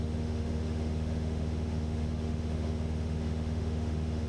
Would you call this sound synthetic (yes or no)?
yes